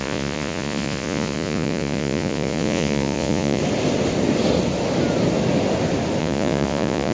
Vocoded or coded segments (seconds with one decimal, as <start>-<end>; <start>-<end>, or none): 0.0-3.6; 6.2-7.1